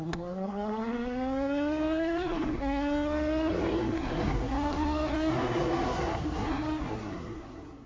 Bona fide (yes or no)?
no